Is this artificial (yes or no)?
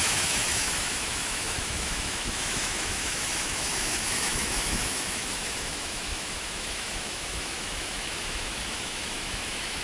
yes